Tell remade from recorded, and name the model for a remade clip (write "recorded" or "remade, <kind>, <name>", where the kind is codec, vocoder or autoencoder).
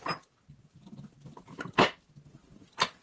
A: recorded